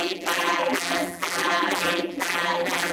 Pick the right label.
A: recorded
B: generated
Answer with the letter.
B